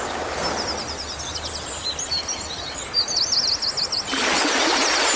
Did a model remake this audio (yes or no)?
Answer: no